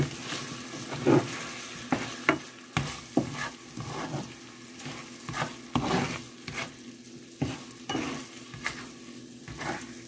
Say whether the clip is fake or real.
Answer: real